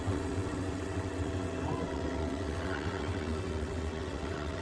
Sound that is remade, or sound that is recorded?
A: remade